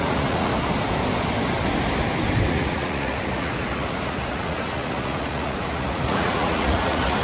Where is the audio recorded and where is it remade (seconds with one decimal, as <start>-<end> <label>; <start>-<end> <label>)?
0.0-0.5 remade; 0.5-2.5 recorded; 2.5-7.2 remade